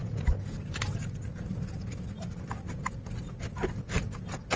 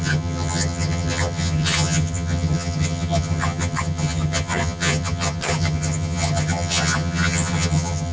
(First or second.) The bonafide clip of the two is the first